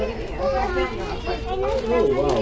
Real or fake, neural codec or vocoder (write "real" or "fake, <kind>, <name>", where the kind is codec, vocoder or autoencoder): real